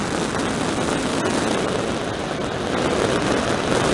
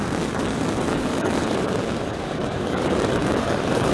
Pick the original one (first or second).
first